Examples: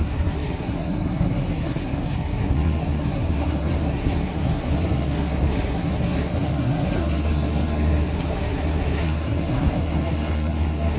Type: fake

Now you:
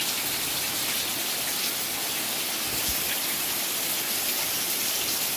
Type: real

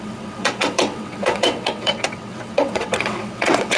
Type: fake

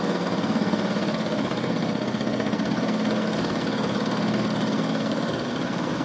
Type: fake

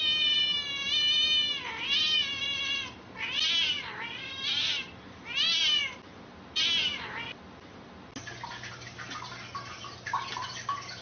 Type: real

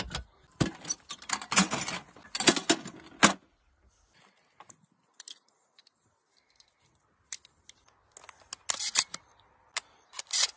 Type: real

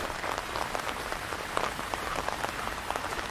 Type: fake